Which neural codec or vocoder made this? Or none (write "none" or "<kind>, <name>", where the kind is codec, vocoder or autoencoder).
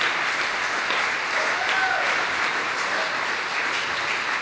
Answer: none